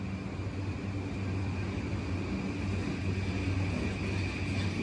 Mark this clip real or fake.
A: real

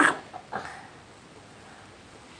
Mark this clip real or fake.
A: real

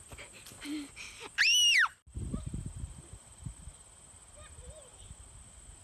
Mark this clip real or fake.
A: real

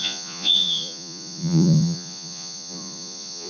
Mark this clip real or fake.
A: fake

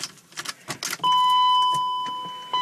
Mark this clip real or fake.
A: real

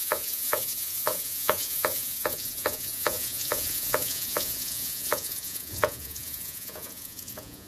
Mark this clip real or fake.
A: fake